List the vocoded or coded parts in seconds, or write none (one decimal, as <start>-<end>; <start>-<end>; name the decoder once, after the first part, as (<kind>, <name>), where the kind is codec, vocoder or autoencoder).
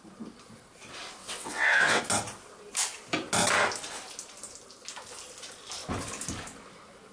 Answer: 1.2-2.0 (vocoder, WaveNeXt)